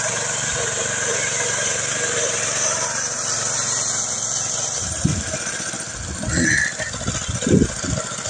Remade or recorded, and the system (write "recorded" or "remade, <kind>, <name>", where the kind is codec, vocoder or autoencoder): recorded